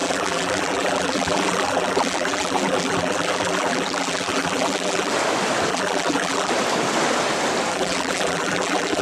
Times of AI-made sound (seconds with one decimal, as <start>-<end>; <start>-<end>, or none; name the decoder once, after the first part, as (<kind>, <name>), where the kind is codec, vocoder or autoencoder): 0.0-5.1 (vocoder, BigVGAN v2); 5.7-6.5; 7.7-9.0